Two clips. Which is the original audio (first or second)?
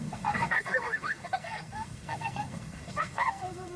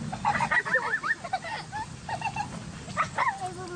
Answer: second